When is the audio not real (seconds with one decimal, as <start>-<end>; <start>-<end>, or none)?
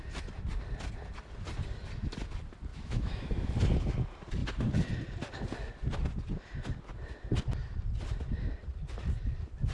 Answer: 2.7-3.5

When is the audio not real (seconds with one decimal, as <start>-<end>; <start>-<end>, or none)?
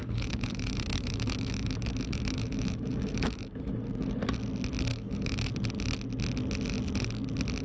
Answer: 0.0-3.7; 4.9-5.5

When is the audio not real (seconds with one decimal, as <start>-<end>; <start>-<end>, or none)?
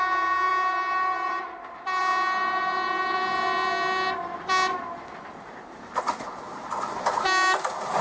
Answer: none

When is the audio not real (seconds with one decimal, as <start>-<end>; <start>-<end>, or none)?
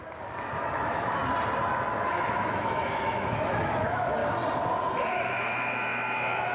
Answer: 0.6-1.2; 1.9-4.2; 5.1-6.5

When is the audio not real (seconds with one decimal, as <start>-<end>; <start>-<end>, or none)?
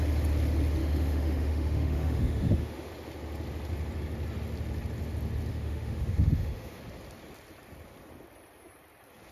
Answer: 0.8-2.9; 5.5-6.8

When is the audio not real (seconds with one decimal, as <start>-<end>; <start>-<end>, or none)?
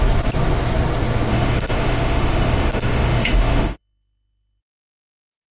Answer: 1.3-4.6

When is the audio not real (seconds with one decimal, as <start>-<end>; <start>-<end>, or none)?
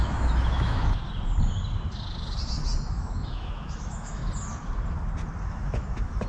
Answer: 0.0-1.0; 2.9-4.2; 5.4-6.3